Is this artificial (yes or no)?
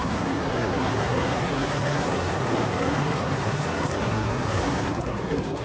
yes